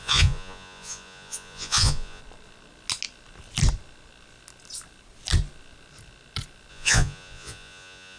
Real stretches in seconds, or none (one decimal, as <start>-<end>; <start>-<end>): 2.2-6.7